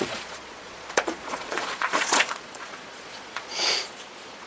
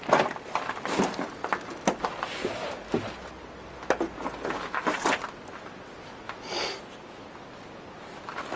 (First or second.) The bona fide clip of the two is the second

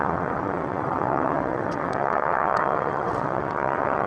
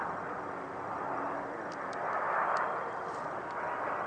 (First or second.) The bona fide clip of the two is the second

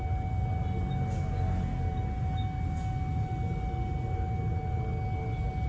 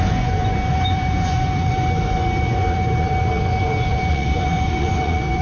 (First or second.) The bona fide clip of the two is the first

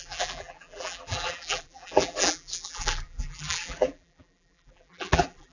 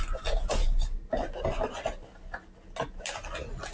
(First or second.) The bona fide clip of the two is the second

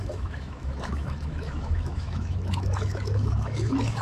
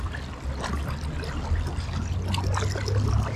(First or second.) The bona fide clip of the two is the second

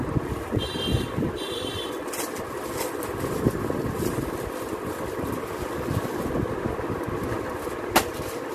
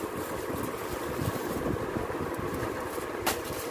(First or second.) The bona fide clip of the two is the first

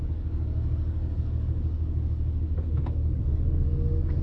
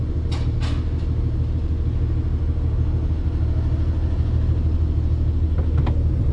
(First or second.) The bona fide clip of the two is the second